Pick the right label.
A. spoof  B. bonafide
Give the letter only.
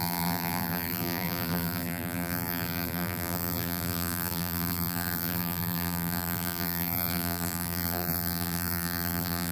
A